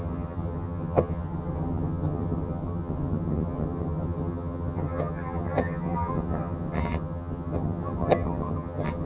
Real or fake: fake